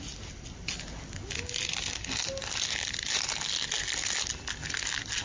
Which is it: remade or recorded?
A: recorded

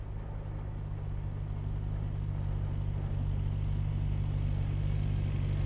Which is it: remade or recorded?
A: recorded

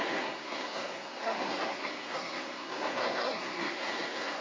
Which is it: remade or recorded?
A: remade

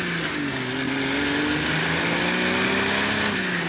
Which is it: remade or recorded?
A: recorded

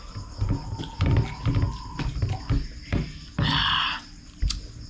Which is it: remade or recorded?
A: recorded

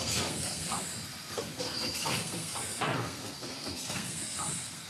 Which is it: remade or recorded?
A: remade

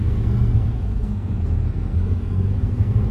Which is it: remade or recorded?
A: remade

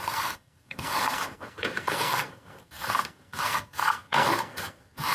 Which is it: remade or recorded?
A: remade